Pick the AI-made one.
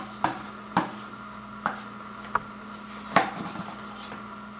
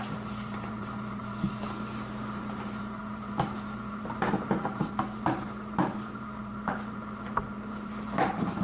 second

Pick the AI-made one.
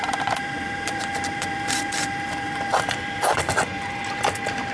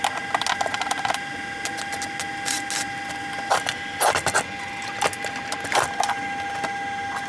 first